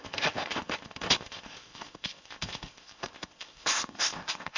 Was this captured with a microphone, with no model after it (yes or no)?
no